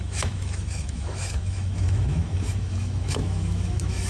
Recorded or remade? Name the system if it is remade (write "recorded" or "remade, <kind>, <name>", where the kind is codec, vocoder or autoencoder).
remade, autoencoder, DAC-VAE